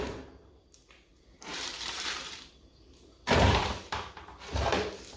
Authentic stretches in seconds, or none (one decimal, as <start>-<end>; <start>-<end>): 0.0-1.1; 4.2-5.2